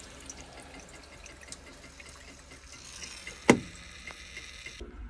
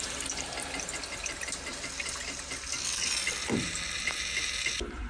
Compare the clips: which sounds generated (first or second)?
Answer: second